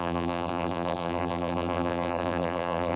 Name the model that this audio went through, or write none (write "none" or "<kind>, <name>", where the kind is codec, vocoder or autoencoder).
vocoder, BigVGAN v2